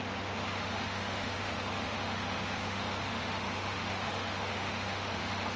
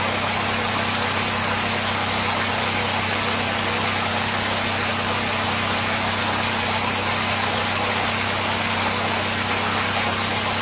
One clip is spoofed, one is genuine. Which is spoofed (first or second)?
first